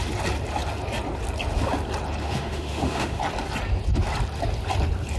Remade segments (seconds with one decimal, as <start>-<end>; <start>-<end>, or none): 2.2-3.2

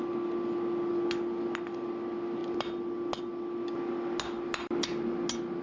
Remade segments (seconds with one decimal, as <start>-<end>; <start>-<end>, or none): none

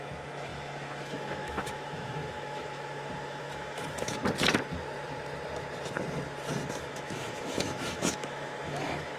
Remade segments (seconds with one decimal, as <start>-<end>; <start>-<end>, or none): 0.0-4.2; 6.8-9.2

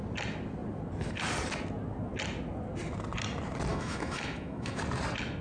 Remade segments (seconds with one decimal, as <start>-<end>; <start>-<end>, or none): 3.7-4.8

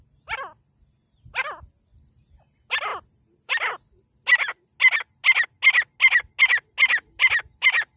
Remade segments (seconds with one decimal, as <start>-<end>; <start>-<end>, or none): none

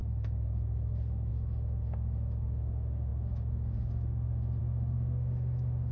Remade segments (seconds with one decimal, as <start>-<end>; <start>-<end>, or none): 0.0-5.9

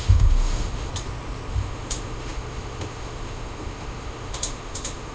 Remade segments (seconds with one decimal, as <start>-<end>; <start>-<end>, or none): 0.0-0.9; 1.5-5.1

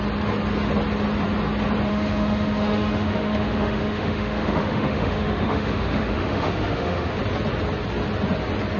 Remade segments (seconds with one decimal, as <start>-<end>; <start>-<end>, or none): 1.9-7.1